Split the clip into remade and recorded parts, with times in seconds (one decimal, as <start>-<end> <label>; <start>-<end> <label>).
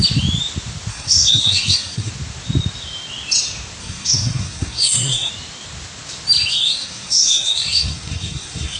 0.0-0.9 recorded; 0.9-2.1 remade; 2.1-3.8 recorded; 3.8-5.3 remade; 5.3-6.5 recorded; 6.5-8.8 remade